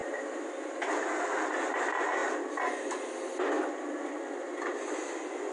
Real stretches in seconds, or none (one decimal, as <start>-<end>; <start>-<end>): 0.0-5.5